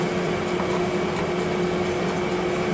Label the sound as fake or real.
real